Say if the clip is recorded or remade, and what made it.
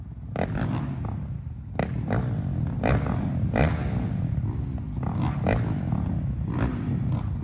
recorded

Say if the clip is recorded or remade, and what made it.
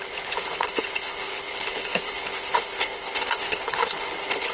remade, codec, HILCodec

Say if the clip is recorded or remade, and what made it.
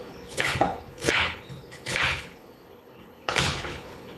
remade, codec, HILCodec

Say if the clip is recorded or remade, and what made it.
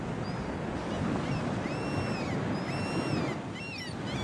recorded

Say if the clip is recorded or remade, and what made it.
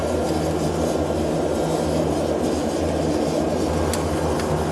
recorded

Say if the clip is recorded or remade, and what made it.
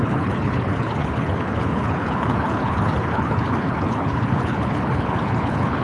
remade, codec, HILCodec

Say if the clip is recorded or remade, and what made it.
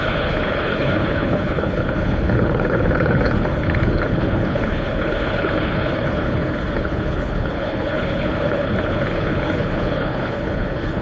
remade, codec, HILCodec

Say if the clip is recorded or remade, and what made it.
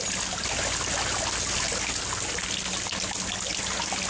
recorded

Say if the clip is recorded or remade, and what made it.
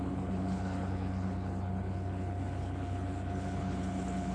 remade, codec, HILCodec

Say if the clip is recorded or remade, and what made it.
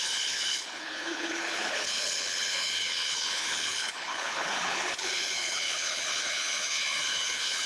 remade, codec, HILCodec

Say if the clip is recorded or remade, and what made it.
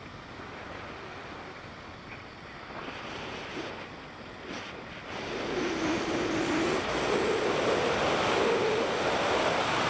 recorded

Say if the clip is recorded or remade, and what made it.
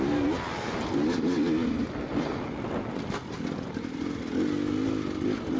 recorded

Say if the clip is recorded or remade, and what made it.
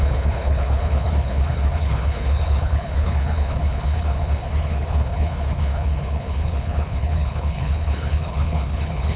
remade, codec, HILCodec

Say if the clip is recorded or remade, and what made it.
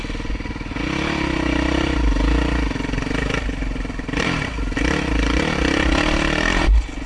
recorded